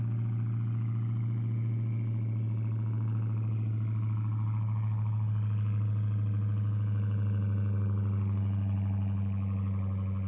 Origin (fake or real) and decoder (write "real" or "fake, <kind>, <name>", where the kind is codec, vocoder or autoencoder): real